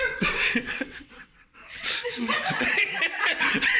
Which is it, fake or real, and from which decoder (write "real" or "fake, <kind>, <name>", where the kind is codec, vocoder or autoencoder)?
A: fake, vocoder, WaveNeXt